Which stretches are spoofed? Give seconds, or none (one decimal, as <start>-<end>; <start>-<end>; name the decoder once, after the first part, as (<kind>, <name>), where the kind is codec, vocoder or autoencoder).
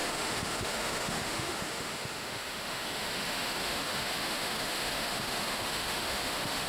0.0-6.7 (autoencoder, DAC-VAE)